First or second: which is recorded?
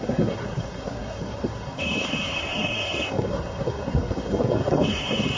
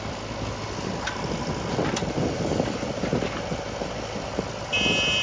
second